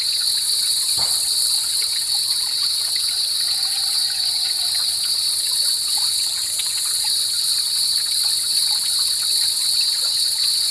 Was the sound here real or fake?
fake